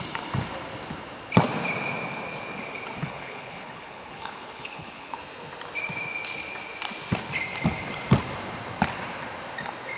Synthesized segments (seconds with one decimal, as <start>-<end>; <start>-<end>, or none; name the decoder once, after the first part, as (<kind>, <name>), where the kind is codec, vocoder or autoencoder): 3.0-5.2 (codec, HILCodec)